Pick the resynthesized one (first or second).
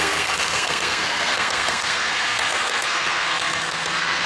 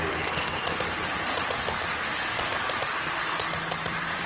first